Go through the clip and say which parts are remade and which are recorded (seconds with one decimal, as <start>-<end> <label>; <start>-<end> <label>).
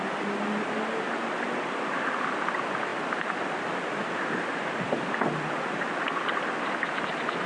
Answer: 0.0-7.5 recorded